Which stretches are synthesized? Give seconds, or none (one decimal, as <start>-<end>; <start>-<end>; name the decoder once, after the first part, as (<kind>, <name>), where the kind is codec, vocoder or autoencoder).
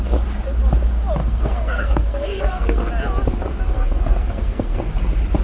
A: 1.2-2.9 (codec, SNAC); 3.7-4.8